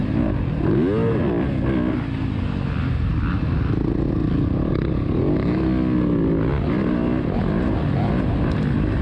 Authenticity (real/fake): real